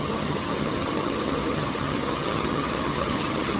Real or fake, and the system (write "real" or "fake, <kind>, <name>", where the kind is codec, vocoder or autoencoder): fake, vocoder, HiFi-GAN